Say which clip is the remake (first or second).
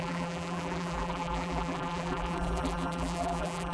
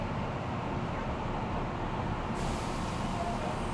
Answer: first